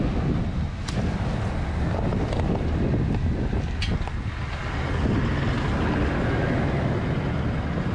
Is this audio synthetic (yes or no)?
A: no